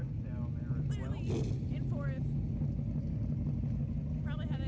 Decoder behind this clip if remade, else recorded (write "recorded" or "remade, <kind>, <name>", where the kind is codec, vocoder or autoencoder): recorded